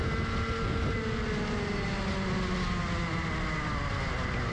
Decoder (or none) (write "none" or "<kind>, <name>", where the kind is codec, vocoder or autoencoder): none